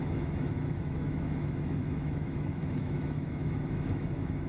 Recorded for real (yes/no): no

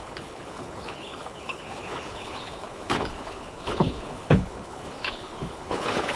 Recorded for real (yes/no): no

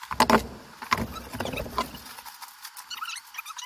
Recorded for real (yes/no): yes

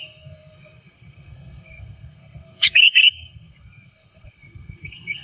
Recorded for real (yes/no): no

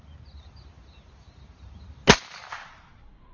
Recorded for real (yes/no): yes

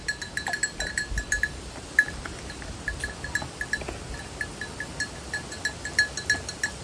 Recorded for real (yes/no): yes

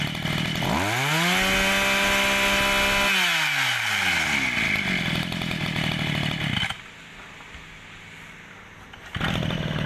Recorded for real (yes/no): yes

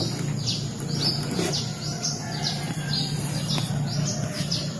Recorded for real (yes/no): yes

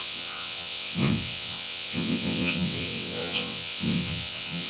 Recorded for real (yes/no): no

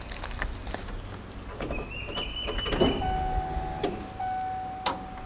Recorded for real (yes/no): yes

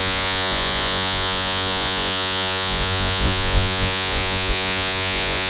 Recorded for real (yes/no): no